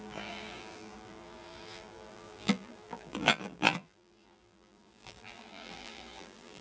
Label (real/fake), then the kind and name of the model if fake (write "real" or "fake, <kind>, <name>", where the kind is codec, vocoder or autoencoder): fake, vocoder, BigVGAN v2